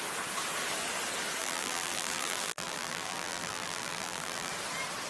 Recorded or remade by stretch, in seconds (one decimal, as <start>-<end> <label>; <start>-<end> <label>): 0.0-1.4 recorded; 1.4-4.5 remade; 4.5-5.1 recorded